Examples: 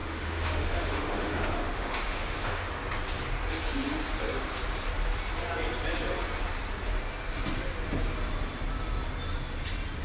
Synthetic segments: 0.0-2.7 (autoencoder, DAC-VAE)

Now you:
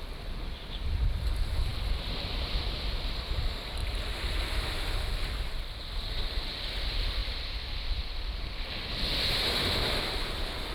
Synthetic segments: none